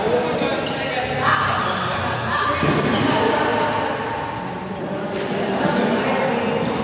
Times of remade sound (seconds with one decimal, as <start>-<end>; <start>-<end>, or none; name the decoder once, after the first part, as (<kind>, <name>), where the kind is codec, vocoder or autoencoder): none